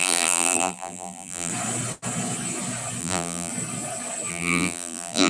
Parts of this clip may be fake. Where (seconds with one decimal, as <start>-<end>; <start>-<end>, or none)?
0.0-1.5; 3.0-3.5; 4.3-5.3